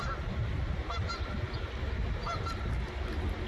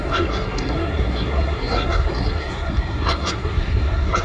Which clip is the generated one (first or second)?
second